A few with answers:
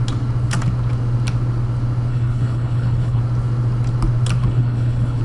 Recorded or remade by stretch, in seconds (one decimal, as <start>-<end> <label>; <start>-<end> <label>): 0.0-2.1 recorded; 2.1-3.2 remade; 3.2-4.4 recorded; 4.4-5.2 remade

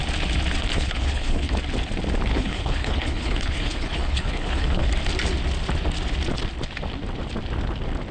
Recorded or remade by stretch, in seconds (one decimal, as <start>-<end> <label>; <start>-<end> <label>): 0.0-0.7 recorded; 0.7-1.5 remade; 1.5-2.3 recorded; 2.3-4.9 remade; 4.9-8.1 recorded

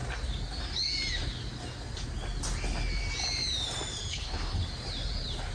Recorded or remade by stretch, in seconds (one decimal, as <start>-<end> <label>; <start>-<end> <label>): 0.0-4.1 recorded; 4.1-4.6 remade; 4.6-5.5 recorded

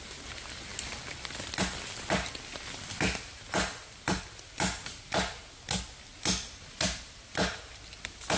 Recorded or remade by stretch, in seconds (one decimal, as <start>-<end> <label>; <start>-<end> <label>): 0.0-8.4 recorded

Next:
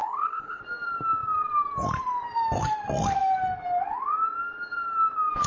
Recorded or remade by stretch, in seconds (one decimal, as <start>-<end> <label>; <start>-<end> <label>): 0.0-0.6 remade; 0.6-5.5 recorded